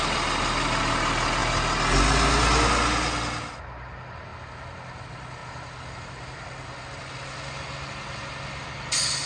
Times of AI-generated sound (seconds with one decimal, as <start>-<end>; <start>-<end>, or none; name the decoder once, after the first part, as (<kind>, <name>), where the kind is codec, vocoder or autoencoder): none